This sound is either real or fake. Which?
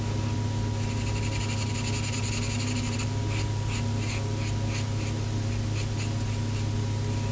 real